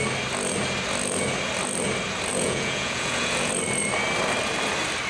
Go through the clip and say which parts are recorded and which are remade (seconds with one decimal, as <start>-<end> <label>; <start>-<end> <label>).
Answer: 0.0-2.3 recorded; 2.3-3.5 remade; 3.5-5.1 recorded